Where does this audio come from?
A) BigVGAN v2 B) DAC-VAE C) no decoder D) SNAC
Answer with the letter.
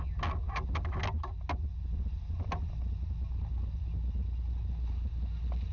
C